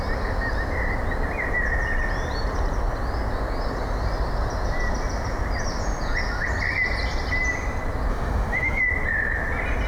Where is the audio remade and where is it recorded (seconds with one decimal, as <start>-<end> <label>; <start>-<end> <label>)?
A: 0.0-8.1 recorded; 8.1-8.8 remade; 8.8-9.9 recorded